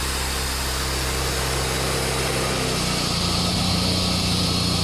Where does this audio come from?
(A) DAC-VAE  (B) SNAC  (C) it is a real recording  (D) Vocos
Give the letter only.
C